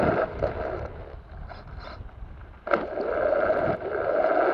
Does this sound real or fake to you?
real